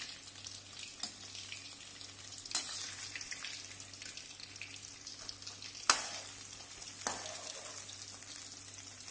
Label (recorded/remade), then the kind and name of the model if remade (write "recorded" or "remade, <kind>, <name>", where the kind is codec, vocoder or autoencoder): recorded